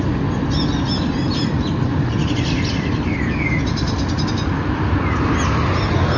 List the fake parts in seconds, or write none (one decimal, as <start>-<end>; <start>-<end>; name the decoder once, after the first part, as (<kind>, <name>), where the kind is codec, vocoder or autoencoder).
none

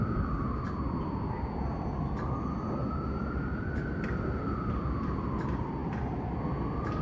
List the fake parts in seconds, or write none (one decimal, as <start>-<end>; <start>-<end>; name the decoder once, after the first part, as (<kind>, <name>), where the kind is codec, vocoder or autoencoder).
2.8-4.5 (vocoder, BigVGAN v2)

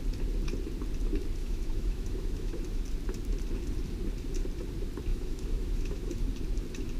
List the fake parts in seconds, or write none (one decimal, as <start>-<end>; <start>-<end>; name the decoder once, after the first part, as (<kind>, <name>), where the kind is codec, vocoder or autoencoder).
1.4-2.8 (autoencoder, DAC-VAE); 5.1-6.3

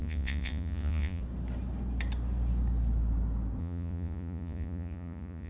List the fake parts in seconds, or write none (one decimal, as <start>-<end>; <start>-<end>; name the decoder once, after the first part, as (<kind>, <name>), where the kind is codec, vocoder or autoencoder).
0.0-1.2 (vocoder, Vocos); 3.6-5.5

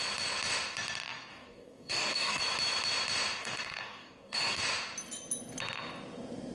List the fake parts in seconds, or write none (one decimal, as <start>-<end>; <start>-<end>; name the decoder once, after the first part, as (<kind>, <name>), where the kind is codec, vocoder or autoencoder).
1.3-2.4 (codec, DAC); 3.4-4.6

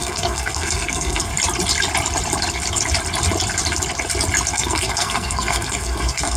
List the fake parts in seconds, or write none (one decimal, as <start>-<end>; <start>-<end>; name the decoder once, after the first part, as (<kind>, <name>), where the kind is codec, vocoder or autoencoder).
0.0-1.3 (codec, SNAC); 4.5-6.4